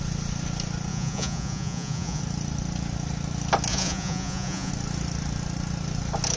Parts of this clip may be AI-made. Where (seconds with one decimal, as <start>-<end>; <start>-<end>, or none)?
0.9-2.2; 3.7-4.7